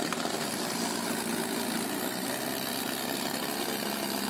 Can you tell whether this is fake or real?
real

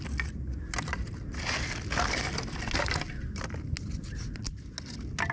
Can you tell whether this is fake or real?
real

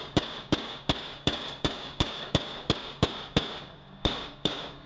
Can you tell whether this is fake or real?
fake